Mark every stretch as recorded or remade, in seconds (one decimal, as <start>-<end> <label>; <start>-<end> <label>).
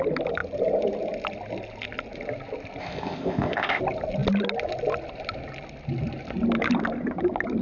0.0-2.8 recorded; 2.8-3.8 remade; 3.8-7.6 recorded